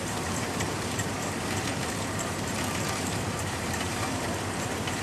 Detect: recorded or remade remade